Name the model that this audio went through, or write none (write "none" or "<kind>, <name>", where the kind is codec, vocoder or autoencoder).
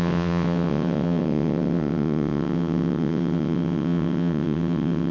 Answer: vocoder, WaveNeXt